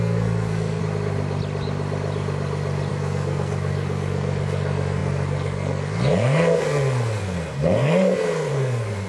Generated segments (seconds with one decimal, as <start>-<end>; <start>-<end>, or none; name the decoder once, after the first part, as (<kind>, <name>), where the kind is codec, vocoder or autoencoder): 0.0-0.8 (codec, SNAC); 2.9-9.1